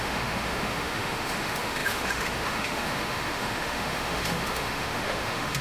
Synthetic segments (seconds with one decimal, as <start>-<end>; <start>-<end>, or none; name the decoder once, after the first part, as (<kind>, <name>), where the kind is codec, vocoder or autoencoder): 0.0-5.6 (autoencoder, DAC-VAE)